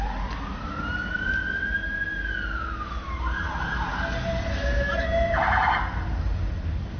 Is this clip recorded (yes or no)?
yes